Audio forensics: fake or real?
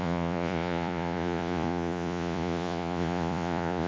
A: fake